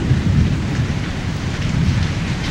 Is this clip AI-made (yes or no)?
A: yes